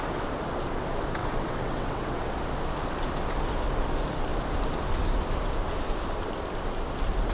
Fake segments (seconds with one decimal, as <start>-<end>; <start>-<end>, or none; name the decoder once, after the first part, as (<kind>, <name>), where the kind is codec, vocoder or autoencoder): 1.2-2.3 (vocoder, WaveNeXt)